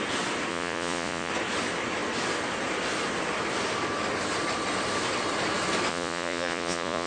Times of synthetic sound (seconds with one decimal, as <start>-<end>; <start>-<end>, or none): 0.5-1.3; 5.9-7.1